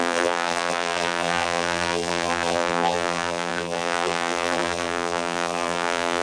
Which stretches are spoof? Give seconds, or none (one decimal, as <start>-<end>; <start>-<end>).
0.0-6.2